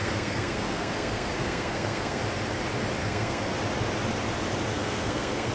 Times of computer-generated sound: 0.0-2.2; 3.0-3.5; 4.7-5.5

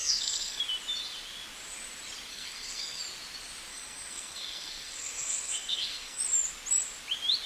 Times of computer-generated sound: 0.0-0.6; 2.3-3.0; 3.7-6.2

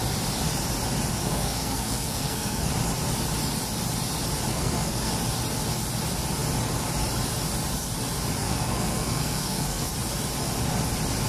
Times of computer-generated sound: 1.2-2.7; 4.5-5.1; 8.4-9.9

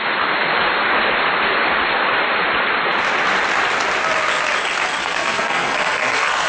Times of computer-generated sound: 5.0-6.5

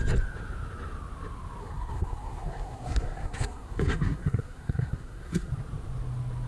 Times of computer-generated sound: 1.6-5.5

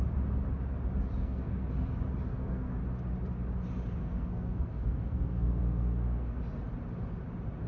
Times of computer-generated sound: 1.2-1.7; 2.3-2.8; 4.0-6.4

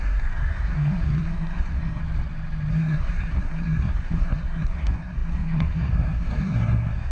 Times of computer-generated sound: 0.0-2.0; 2.7-7.1

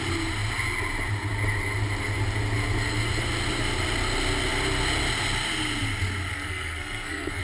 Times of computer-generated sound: 6.3-7.4